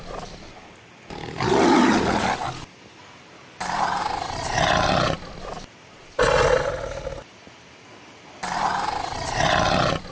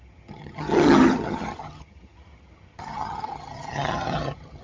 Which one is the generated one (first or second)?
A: second